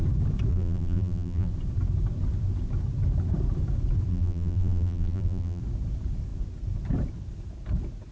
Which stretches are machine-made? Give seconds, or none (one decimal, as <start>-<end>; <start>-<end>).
0.5-1.5; 4.1-5.6